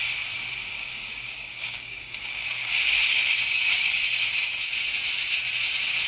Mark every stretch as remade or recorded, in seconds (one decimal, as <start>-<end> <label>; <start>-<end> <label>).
0.0-0.7 recorded; 0.7-4.2 remade; 4.2-6.1 recorded